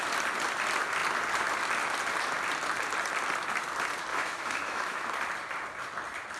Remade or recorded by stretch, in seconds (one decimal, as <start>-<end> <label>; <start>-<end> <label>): 0.0-4.1 recorded; 4.1-5.0 remade; 5.0-6.4 recorded